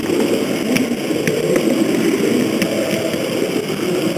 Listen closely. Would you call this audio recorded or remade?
recorded